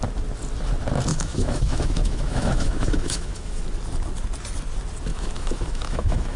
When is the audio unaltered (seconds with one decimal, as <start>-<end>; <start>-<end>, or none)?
0.0-1.1; 3.6-5.1